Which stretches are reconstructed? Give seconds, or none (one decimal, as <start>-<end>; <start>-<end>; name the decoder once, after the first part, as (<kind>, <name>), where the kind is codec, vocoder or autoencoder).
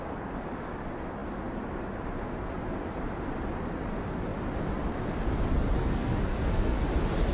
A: 5.8-6.8 (codec, SNAC)